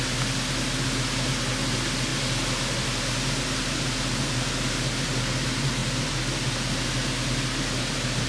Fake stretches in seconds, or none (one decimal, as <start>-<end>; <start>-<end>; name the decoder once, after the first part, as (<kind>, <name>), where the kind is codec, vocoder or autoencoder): none